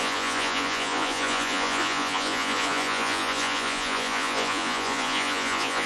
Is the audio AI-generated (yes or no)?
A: yes